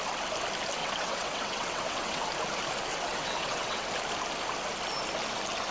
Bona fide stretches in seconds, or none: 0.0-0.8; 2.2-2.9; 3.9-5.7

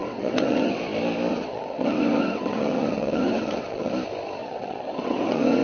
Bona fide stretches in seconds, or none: 0.8-1.3; 3.9-4.4

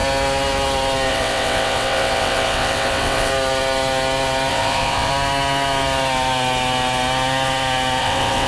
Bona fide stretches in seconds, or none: 0.0-1.1; 3.3-4.5; 5.1-8.0

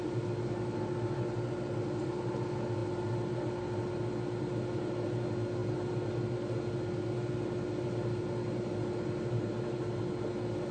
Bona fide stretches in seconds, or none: 0.0-10.7

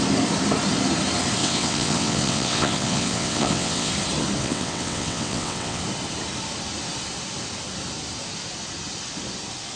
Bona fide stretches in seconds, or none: 0.0-1.4; 3.9-4.4; 5.8-9.8

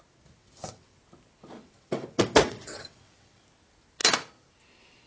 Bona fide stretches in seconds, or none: 0.0-0.4; 1.0-1.6; 3.4-5.1